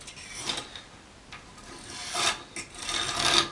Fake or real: real